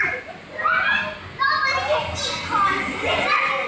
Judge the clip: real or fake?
real